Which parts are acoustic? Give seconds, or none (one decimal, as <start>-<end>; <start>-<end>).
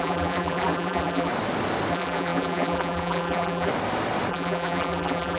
1.3-1.9; 3.7-4.3